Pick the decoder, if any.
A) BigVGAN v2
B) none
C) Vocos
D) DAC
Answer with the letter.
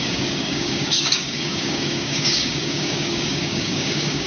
D